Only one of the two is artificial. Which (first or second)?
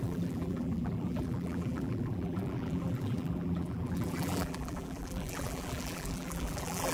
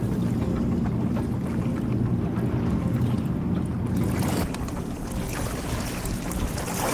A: first